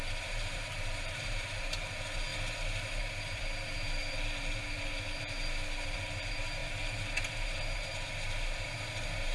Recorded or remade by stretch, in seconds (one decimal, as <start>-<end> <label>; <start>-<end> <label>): 0.0-2.3 remade; 2.3-3.0 recorded; 3.0-9.3 remade

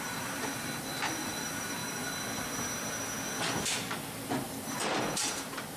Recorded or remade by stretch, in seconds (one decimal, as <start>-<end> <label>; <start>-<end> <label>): 0.0-1.8 remade; 1.8-5.0 recorded; 5.0-5.8 remade

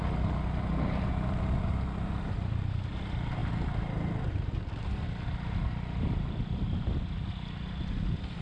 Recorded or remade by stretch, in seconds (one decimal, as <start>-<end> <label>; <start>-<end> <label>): 0.0-8.4 recorded

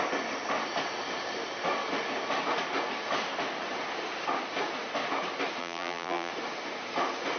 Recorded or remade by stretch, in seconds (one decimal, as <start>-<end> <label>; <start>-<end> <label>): 0.0-5.6 recorded; 5.6-6.3 remade; 6.3-7.4 recorded

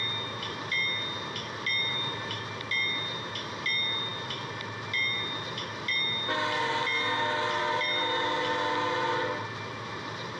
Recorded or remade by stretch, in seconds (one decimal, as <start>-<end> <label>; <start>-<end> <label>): 0.0-1.8 recorded; 1.8-2.4 remade; 2.4-10.4 recorded